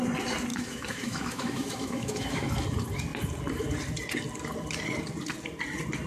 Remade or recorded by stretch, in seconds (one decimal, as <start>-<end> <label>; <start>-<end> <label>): 0.0-0.5 recorded; 0.5-2.5 remade; 2.5-6.1 recorded